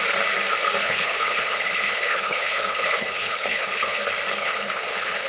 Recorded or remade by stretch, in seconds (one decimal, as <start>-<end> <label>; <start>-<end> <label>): 0.0-0.8 recorded; 0.8-4.0 remade; 4.0-4.4 recorded; 4.4-5.3 remade